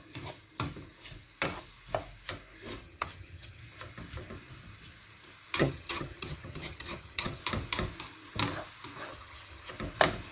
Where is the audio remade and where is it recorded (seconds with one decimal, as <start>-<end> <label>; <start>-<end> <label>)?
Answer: 0.0-2.8 recorded; 2.8-3.6 remade; 3.6-5.6 recorded; 5.6-7.4 remade; 7.4-9.1 recorded; 9.1-9.7 remade; 9.7-10.3 recorded